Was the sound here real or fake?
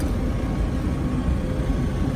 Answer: real